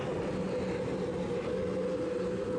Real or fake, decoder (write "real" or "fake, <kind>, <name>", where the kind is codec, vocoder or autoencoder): real